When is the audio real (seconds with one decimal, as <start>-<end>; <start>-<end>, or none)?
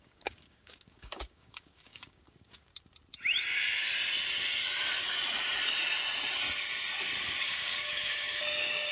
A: 2.7-7.4